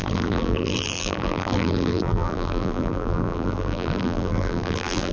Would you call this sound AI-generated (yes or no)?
yes